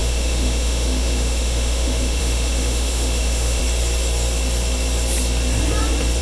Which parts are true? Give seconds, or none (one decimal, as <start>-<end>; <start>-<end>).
3.6-6.2

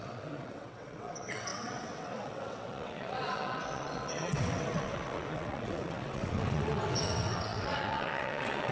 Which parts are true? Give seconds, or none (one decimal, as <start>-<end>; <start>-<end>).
none

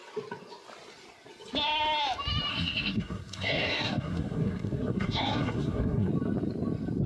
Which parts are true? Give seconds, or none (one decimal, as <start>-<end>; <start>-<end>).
0.0-2.5; 6.1-7.1

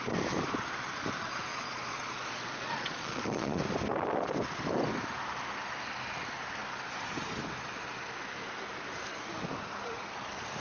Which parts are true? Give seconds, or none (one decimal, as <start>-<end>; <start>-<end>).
0.0-1.5; 3.6-10.6

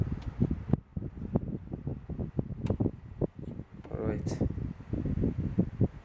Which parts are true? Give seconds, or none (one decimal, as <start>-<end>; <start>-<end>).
0.0-6.0

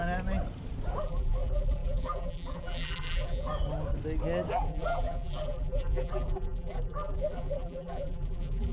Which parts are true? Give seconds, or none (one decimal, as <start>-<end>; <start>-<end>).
0.0-1.0; 3.5-4.5

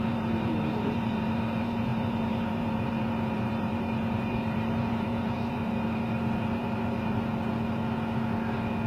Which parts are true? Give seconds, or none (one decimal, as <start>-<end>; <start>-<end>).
7.3-8.9

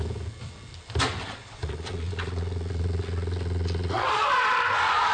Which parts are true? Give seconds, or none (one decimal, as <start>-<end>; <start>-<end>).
0.0-1.2; 4.3-5.1